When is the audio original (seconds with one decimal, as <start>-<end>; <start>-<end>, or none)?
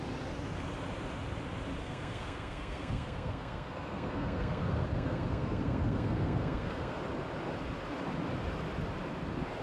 0.0-1.8; 7.0-9.6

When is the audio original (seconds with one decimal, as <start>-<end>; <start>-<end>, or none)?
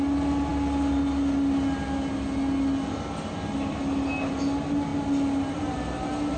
0.0-6.4